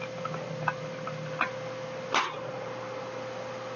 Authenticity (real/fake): real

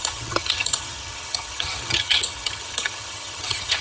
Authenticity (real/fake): fake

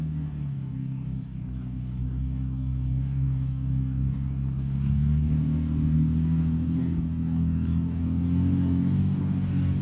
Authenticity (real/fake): fake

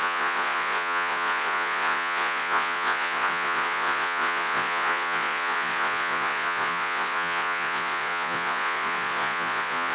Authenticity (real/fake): fake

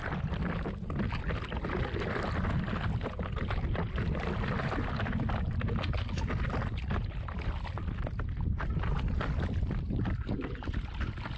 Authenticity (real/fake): real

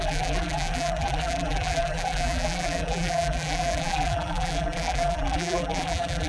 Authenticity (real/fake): fake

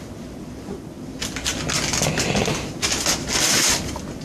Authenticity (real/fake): real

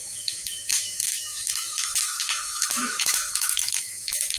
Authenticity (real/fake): fake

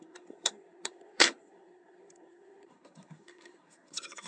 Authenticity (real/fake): fake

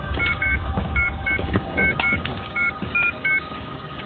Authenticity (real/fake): fake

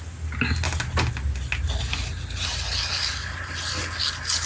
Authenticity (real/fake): real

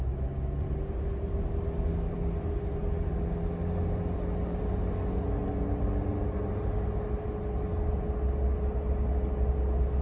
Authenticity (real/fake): real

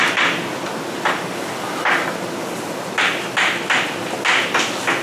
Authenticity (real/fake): real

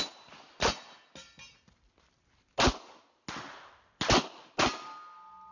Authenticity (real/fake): real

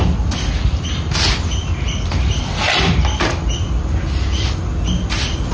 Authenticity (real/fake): fake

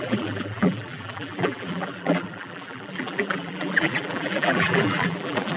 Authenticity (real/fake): fake